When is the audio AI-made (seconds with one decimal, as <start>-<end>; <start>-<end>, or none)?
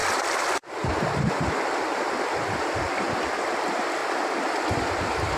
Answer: 0.0-4.0; 4.7-5.4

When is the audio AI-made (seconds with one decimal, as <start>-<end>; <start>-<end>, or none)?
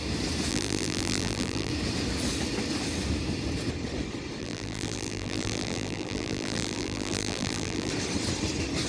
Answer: 0.5-1.7; 4.4-7.9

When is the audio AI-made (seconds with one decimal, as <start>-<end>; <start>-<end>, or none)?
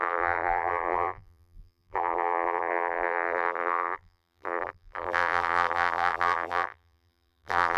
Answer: 0.0-7.8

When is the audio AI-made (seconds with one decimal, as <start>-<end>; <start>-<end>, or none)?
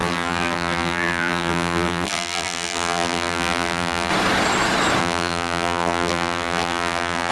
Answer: 0.0-4.1; 5.0-7.3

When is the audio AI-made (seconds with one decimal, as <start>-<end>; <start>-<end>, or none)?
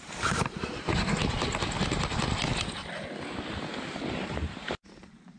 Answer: 0.0-0.9; 4.1-5.4